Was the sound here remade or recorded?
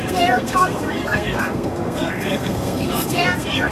remade